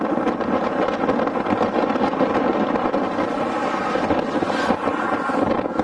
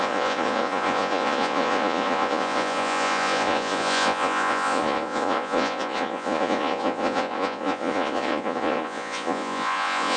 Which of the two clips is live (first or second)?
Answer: first